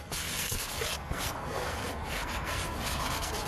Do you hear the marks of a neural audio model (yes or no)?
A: yes